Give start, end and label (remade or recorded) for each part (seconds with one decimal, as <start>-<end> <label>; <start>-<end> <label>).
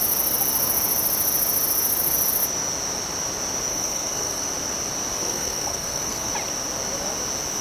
0.0-3.7 recorded; 3.7-4.4 remade; 4.4-5.1 recorded; 5.1-6.3 remade; 6.3-7.6 recorded